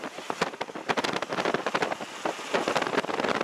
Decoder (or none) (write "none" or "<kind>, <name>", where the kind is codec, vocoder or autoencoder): none